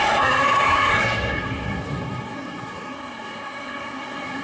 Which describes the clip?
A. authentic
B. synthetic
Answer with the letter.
B